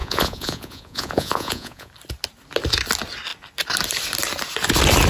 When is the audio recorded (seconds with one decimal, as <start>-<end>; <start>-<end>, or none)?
1.9-5.1